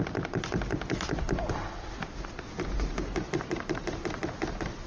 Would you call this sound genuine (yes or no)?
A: yes